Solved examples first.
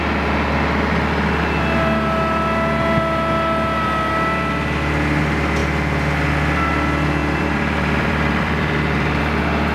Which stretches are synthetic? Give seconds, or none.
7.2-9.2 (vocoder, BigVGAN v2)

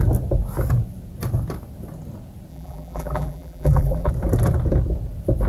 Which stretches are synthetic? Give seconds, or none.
2.5-4.1 (vocoder, BigVGAN v2)

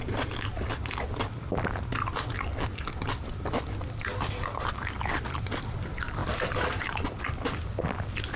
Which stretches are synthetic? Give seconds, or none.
none

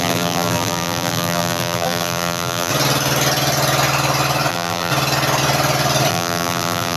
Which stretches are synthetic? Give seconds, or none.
0.0-2.7 (vocoder, BigVGAN v2); 4.5-4.9; 6.1-7.0

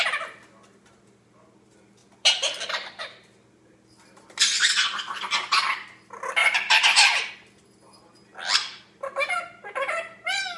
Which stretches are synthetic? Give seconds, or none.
6.4-7.3 (vocoder, BigVGAN v2); 8.7-9.4

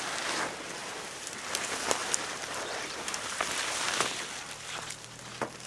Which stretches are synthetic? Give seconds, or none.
0.8-1.4 (vocoder, BigVGAN v2); 2.0-4.0